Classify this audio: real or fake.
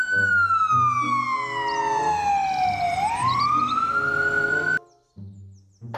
real